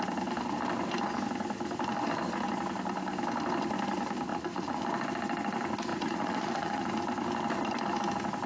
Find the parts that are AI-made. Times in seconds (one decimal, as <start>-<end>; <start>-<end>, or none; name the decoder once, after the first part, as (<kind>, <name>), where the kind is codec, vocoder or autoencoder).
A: 4.3-4.8 (vocoder, Vocos); 5.9-7.0